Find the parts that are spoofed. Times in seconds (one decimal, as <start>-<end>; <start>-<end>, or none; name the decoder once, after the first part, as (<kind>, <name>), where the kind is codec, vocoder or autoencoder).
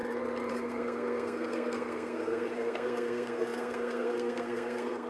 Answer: 0.5-5.1 (codec, SNAC)